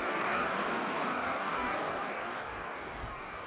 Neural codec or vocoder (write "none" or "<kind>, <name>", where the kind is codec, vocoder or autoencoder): codec, DAC